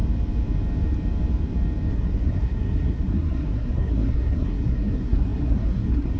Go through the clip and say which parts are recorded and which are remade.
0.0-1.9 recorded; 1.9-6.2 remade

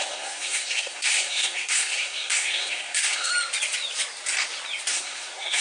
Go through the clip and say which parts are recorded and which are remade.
0.0-3.3 remade; 3.3-4.9 recorded; 4.9-5.6 remade

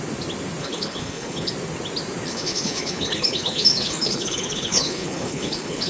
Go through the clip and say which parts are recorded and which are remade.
0.0-0.6 recorded; 0.6-1.5 remade; 1.5-2.3 recorded; 2.3-5.9 remade

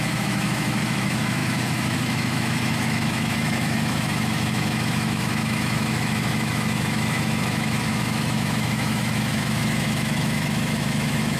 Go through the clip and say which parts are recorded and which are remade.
0.0-11.4 remade